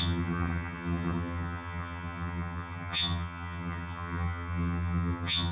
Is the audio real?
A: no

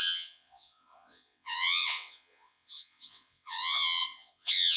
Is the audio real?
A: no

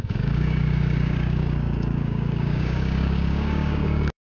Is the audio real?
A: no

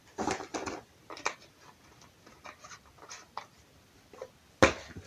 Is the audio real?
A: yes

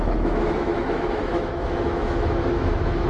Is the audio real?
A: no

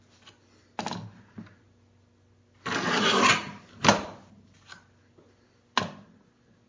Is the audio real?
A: yes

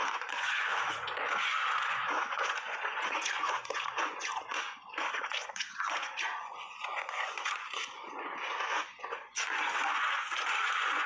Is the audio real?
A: no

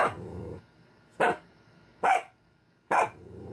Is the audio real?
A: no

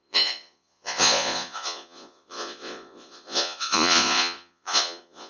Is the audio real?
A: no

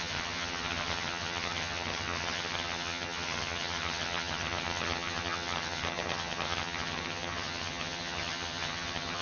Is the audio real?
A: no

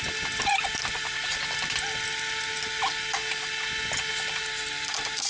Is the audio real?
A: yes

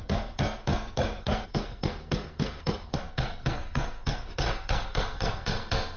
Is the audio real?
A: no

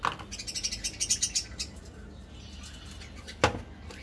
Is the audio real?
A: yes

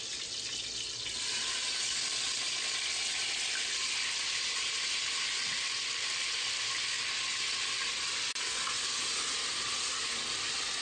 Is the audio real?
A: yes